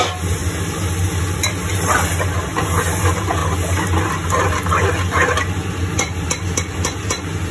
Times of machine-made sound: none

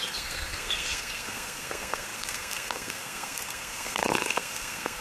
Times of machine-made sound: 0.0-5.0 (codec, SNAC)